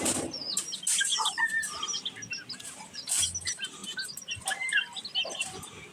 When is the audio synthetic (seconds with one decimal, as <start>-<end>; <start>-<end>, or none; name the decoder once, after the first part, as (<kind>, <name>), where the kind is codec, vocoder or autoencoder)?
none

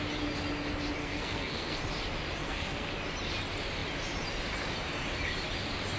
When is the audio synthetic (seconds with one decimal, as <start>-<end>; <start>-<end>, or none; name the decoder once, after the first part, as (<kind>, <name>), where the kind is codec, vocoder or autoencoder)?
1.0-1.8 (codec, SNAC); 2.4-2.9

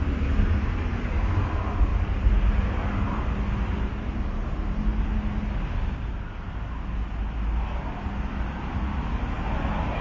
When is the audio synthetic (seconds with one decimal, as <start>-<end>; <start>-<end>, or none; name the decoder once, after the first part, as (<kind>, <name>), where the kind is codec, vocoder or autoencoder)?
1.9-3.2 (vocoder, BigVGAN v2)

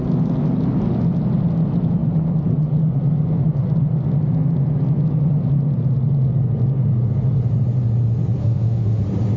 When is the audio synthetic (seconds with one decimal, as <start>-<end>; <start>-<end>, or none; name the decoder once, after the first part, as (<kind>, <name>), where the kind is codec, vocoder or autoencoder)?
8.4-9.0 (autoencoder, DAC-VAE)

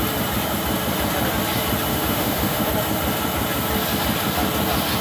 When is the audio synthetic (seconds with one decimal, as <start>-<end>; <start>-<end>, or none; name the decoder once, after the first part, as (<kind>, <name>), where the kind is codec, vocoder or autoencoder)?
1.9-2.7 (autoencoder, DAC-VAE)